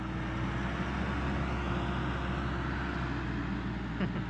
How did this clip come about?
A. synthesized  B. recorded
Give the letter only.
B